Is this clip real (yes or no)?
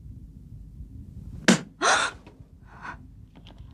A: yes